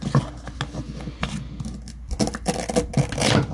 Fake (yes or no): no